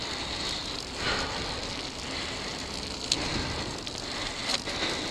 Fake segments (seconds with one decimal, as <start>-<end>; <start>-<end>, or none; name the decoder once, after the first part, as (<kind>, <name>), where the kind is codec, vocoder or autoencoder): none